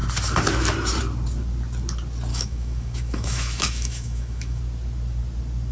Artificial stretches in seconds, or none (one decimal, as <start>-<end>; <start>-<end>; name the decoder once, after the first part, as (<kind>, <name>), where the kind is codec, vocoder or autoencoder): 2.3-4.6 (autoencoder, DAC-VAE)